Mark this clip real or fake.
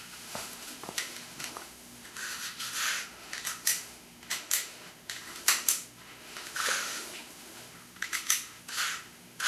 fake